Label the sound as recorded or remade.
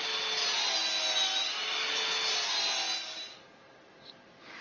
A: recorded